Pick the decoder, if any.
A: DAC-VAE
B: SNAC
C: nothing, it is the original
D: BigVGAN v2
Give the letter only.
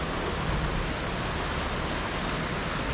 C